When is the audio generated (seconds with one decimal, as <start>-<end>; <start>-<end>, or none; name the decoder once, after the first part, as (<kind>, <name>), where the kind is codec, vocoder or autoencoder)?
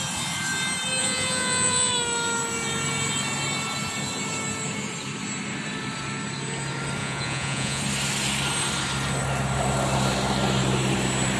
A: 1.0-1.9 (vocoder, Vocos); 7.0-7.8